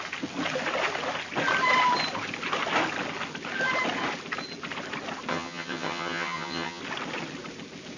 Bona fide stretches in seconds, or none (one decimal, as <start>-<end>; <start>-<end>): 0.0-5.3; 6.8-8.0